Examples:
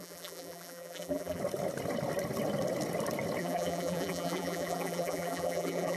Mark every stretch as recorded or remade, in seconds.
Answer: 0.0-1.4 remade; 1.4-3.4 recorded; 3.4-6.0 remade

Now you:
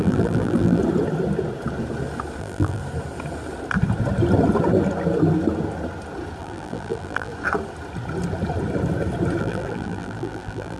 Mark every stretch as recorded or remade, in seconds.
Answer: 0.0-0.8 remade; 0.8-2.4 recorded; 2.4-2.8 remade; 2.8-6.4 recorded; 6.4-7.3 remade; 7.3-9.4 recorded; 9.4-10.8 remade

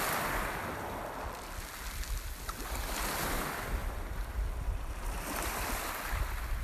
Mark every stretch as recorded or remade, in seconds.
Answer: 0.0-6.6 recorded